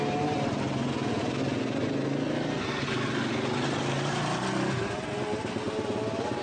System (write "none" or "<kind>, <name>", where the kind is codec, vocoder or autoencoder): none